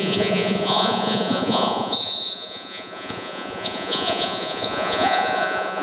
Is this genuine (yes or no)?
no